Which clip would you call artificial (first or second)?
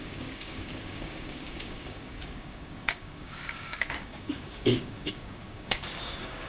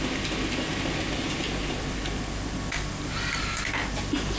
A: first